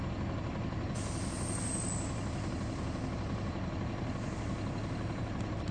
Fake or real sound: real